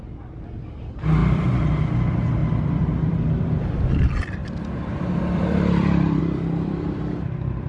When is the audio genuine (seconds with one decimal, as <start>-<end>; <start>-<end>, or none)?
0.0-1.2; 1.7-2.4; 3.3-4.4; 6.2-7.7